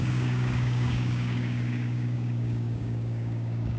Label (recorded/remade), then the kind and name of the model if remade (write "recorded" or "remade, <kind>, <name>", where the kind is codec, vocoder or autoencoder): remade, codec, DAC